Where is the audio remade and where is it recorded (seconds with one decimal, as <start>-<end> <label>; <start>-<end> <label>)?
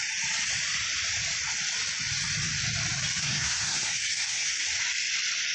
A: 0.0-3.2 recorded; 3.2-4.5 remade; 4.5-5.5 recorded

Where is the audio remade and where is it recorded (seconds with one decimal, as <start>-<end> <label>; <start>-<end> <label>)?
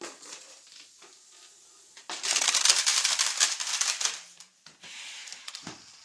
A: 0.0-6.0 remade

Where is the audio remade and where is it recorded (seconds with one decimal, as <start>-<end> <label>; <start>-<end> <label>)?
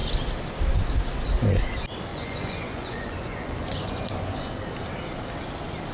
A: 0.0-2.1 recorded; 2.1-4.5 remade; 4.5-5.9 recorded